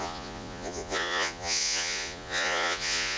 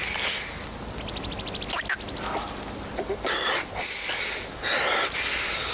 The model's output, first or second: first